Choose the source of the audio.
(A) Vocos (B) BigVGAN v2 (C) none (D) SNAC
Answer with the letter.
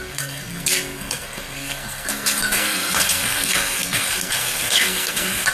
D